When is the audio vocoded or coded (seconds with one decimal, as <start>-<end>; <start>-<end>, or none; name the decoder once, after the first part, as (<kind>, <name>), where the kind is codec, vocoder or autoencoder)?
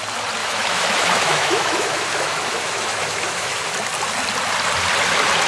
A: 0.4-3.7 (autoencoder, DAC-VAE)